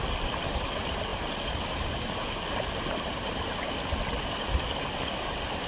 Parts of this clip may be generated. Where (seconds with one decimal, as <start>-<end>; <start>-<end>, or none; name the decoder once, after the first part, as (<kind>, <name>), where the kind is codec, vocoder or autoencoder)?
none